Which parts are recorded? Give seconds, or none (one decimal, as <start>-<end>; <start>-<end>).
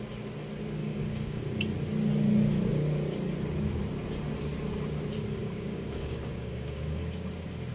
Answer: 0.0-0.8; 1.4-5.4; 7.3-7.7